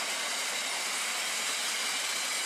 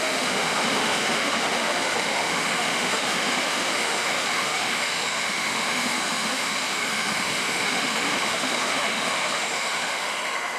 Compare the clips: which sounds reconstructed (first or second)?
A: second